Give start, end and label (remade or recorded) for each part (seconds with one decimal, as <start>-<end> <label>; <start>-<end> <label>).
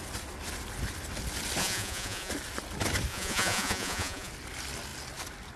0.0-1.6 recorded; 1.6-2.3 remade; 2.3-3.1 recorded; 3.1-4.3 remade; 4.3-5.6 recorded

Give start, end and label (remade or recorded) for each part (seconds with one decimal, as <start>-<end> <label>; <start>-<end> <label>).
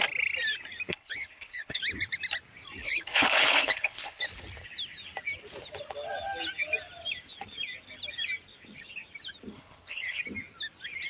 0.0-0.9 recorded; 0.9-1.8 remade; 1.8-2.8 recorded; 2.8-4.2 remade; 4.2-9.5 recorded; 9.5-10.2 remade; 10.2-11.1 recorded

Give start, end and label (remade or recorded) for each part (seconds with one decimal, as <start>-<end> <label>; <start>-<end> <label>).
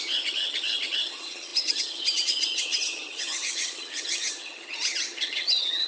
0.0-5.9 remade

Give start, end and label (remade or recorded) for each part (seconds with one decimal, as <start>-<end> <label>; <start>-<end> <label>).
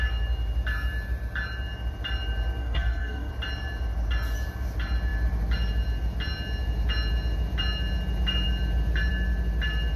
0.0-2.6 recorded; 2.6-3.3 remade; 3.3-10.0 recorded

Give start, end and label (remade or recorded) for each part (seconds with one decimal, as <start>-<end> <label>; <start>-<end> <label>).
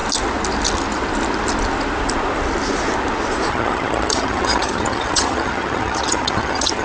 0.0-3.5 recorded; 3.5-6.8 remade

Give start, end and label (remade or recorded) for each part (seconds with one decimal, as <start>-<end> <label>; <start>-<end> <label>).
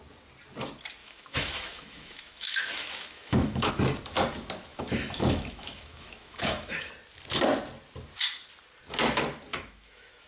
0.0-1.0 recorded; 1.0-3.7 remade; 3.7-4.7 recorded; 4.7-6.9 remade; 6.9-9.5 recorded; 9.5-10.3 remade